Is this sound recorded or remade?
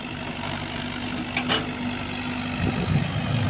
recorded